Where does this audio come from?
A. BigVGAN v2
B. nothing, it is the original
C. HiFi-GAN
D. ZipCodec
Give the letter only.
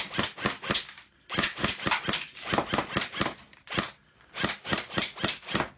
B